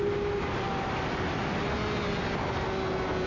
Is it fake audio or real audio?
real